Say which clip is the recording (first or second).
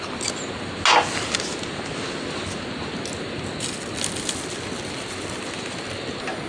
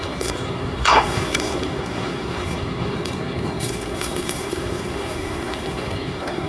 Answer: first